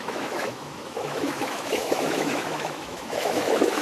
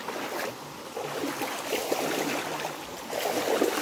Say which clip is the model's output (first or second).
first